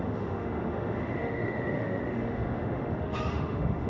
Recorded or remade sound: remade